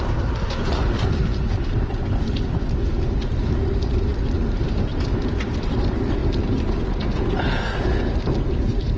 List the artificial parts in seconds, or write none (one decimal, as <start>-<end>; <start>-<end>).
0.0-4.1; 5.2-6.2; 8.1-9.0